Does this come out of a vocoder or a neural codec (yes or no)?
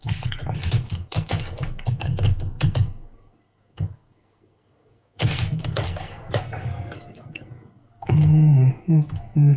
yes